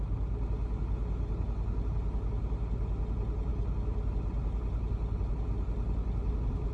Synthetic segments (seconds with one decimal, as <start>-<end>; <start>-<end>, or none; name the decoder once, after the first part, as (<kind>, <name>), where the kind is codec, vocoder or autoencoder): none